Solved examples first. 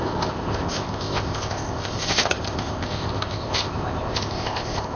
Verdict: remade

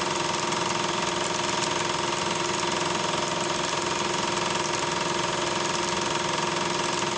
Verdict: recorded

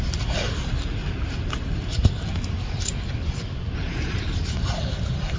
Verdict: recorded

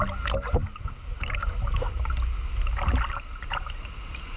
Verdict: recorded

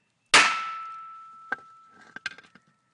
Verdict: recorded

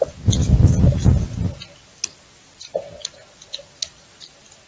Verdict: recorded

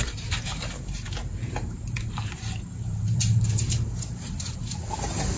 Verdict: remade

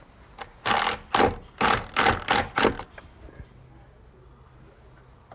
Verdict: recorded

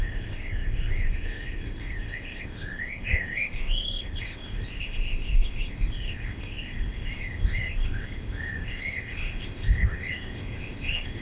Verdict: remade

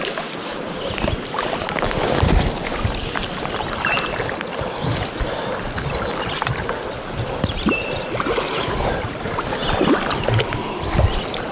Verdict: recorded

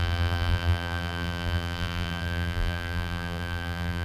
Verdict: remade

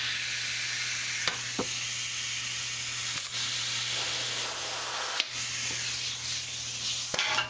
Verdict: recorded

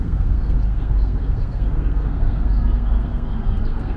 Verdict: remade